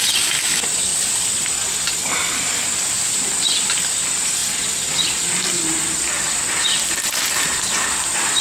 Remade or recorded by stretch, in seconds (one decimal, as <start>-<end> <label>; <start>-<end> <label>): 0.0-8.4 recorded